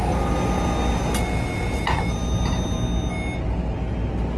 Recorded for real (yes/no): yes